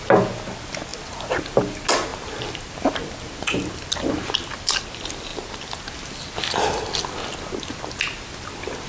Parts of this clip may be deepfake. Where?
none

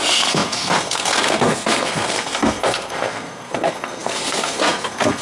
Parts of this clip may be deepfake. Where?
0.0-5.2 (codec, SNAC)

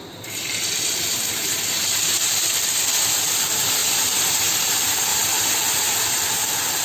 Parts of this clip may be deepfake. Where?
1.1-1.6 (vocoder, BigVGAN v2); 5.1-5.9

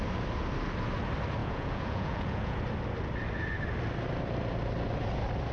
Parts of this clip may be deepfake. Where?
1.4-2.6 (vocoder, Vocos)

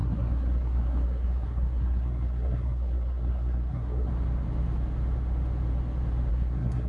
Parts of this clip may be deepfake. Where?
0.0-4.1 (codec, SNAC); 6.3-6.9

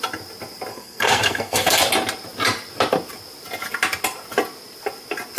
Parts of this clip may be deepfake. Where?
0.7-1.8 (codec, SNAC)

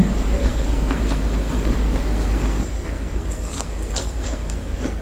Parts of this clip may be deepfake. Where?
0.0-5.0 (codec, SNAC)

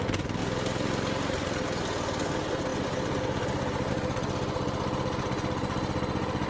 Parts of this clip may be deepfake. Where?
none